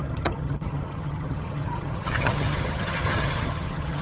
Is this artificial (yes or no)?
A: yes